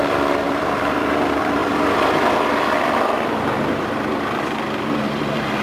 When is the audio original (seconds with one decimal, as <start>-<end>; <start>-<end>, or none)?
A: none